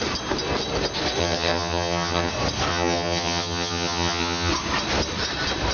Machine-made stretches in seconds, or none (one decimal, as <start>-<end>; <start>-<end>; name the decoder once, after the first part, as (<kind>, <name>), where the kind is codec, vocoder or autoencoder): 1.2-2.3 (vocoder, HiFi-GAN); 2.7-4.5